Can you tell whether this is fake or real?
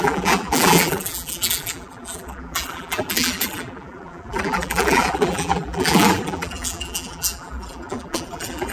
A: fake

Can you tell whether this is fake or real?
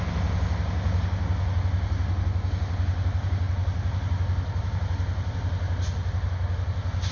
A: real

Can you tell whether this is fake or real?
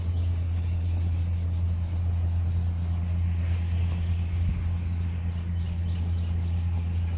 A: real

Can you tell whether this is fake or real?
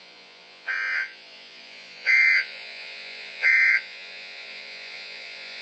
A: fake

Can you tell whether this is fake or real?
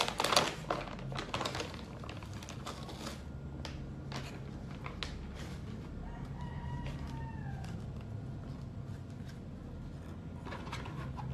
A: real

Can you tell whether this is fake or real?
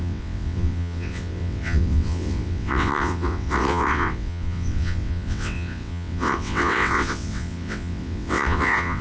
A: fake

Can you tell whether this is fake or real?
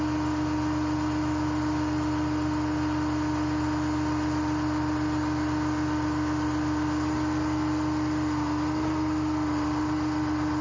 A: real